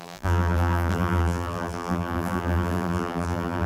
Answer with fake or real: fake